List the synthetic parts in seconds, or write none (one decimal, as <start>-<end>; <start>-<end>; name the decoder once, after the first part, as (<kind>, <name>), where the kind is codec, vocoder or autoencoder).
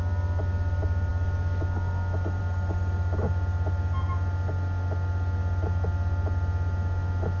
none